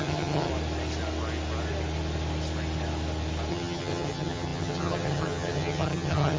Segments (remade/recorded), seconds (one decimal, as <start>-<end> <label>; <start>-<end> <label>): 0.0-0.5 remade; 0.5-3.5 recorded; 3.5-6.4 remade